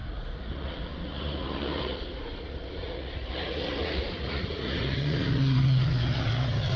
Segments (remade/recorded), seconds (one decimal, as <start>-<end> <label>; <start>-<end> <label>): 0.0-6.8 remade